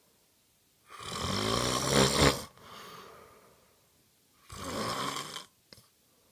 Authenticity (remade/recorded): recorded